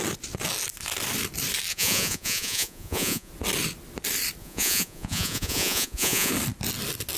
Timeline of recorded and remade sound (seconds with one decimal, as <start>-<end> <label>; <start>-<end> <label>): 0.0-1.7 recorded; 1.7-3.3 remade; 3.3-4.4 recorded; 4.4-6.3 remade; 6.3-7.2 recorded